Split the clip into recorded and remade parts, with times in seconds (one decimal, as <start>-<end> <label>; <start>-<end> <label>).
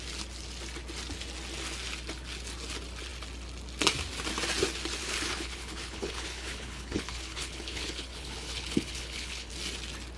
0.0-5.0 recorded; 5.0-9.5 remade; 9.5-10.2 recorded